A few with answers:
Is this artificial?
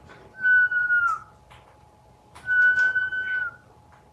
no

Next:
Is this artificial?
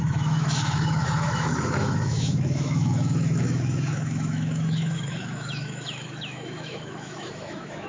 yes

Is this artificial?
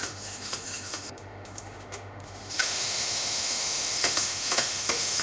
yes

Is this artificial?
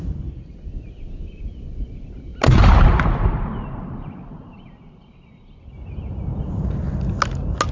no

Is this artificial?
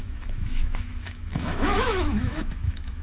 yes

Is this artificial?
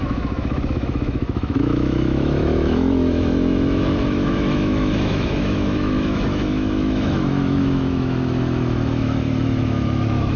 yes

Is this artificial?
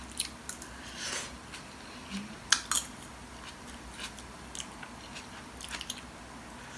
no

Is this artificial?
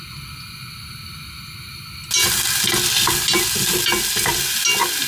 no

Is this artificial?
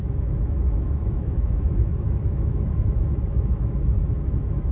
yes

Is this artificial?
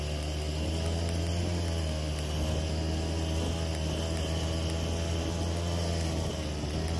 no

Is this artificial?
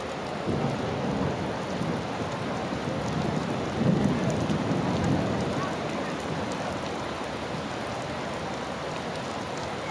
no